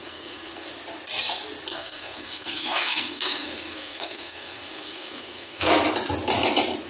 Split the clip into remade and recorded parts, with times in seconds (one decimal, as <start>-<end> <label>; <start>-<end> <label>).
0.0-0.7 remade; 0.7-1.7 recorded; 1.7-5.7 remade; 5.7-6.9 recorded

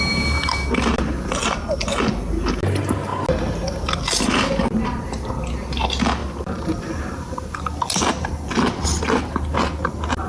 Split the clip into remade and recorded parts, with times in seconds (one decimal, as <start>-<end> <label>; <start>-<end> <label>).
0.0-10.3 recorded

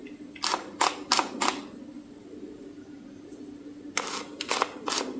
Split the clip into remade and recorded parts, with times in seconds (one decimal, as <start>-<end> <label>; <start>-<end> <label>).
0.0-5.2 recorded

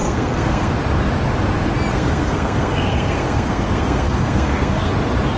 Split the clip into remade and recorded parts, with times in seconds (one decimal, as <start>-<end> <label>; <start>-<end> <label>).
0.0-0.7 remade; 0.7-1.9 recorded; 1.9-4.9 remade; 4.9-5.4 recorded